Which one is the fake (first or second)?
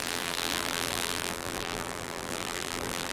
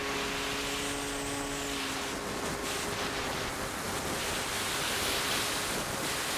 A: first